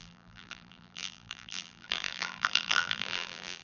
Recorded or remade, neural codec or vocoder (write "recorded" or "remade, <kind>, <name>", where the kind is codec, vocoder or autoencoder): remade, vocoder, BigVGAN v2